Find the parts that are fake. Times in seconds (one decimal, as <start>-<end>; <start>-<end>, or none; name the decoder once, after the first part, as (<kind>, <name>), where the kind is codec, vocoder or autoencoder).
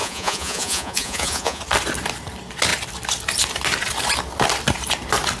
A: 0.0-1.6 (vocoder, Vocos)